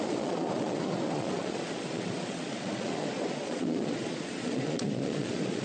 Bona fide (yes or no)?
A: no